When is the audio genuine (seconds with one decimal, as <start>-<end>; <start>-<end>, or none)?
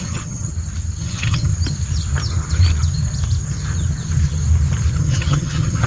0.5-1.0; 1.5-5.0